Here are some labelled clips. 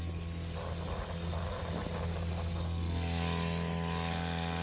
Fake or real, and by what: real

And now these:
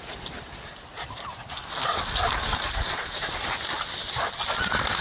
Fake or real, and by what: real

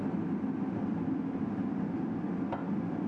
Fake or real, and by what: real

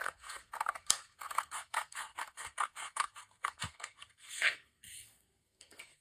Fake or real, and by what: fake, codec, SNAC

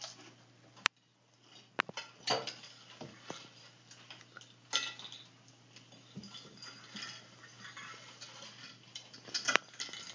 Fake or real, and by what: real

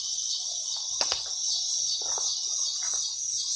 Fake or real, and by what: real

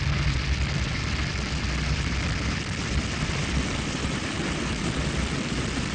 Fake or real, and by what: fake, vocoder, BigVGAN v2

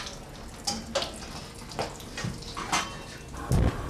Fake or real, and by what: real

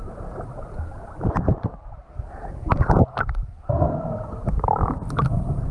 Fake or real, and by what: real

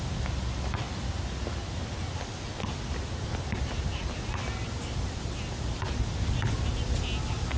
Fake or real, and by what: real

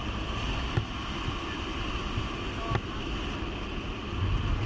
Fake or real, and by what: real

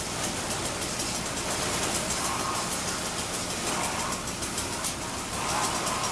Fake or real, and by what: real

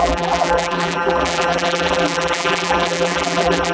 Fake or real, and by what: fake, vocoder, BigVGAN v2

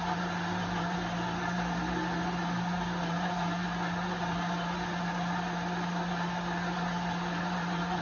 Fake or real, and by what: real